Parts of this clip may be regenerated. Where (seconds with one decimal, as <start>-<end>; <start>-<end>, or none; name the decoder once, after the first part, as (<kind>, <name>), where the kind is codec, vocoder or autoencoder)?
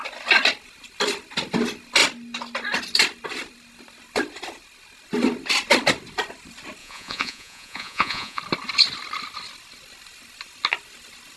6.8-8.4 (vocoder, Vocos)